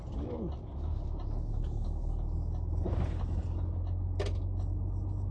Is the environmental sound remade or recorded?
recorded